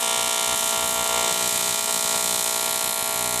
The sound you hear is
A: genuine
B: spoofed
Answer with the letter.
A